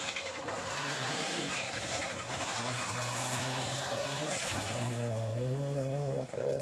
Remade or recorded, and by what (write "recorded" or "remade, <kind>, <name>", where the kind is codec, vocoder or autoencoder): remade, codec, SNAC